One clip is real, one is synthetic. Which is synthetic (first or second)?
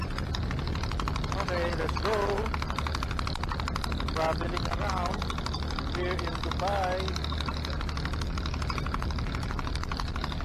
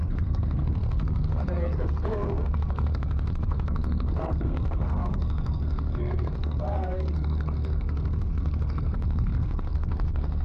second